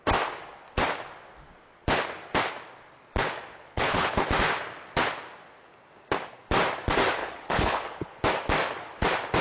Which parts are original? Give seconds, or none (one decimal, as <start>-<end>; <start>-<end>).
0.0-3.5; 4.1-7.2; 8.2-9.4